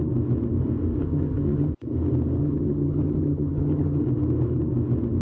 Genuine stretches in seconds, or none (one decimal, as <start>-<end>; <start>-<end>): 0.0-1.0; 1.7-2.4; 4.0-5.2